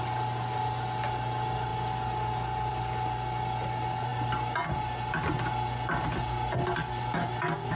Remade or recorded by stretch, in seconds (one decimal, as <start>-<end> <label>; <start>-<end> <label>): 0.0-7.8 recorded